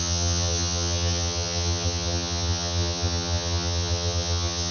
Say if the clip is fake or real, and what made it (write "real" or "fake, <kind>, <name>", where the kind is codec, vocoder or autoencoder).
fake, vocoder, HiFi-GAN